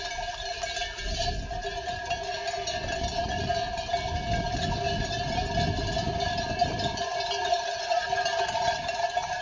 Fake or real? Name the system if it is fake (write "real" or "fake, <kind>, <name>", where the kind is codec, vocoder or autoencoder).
real